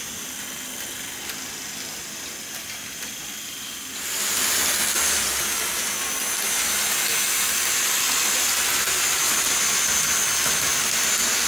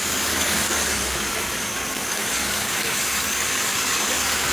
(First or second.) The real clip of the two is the first